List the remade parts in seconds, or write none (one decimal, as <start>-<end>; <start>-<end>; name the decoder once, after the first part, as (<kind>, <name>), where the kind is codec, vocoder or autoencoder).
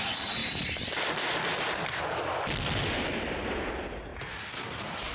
none